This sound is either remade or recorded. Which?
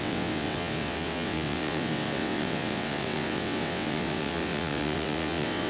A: remade